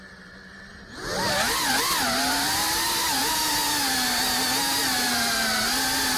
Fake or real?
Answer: real